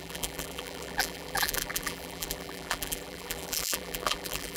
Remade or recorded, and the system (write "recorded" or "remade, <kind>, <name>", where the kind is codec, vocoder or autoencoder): remade, vocoder, BigVGAN v2